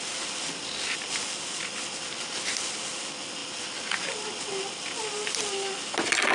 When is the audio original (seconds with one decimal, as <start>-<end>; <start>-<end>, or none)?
0.0-6.3